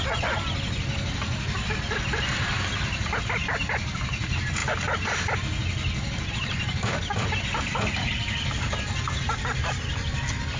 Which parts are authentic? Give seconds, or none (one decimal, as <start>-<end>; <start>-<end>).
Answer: 0.0-10.6